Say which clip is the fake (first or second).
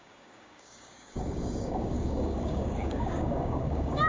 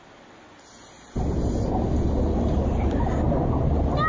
first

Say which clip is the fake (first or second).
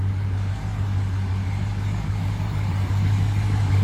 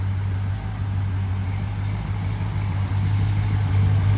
first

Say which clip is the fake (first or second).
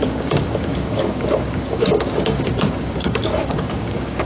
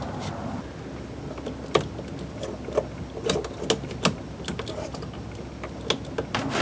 first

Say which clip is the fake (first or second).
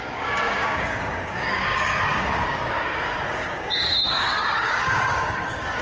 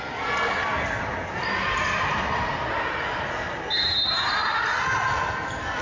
first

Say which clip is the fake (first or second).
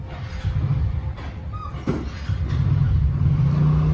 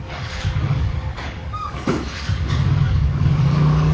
second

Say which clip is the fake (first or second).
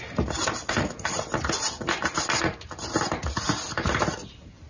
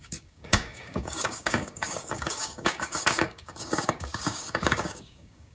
second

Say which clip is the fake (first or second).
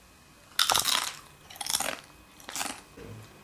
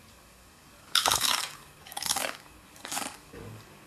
second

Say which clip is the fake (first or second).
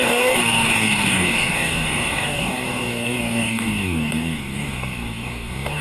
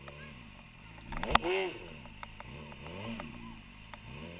first